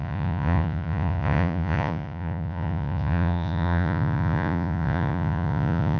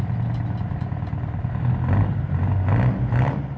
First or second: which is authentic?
second